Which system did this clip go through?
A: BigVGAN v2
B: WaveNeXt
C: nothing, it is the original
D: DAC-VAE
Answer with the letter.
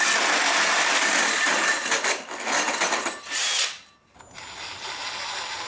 C